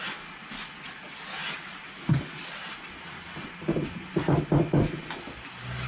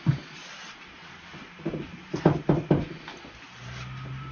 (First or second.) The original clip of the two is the first